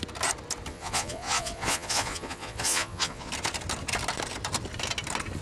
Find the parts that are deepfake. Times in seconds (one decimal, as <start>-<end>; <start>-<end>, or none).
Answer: 0.7-3.3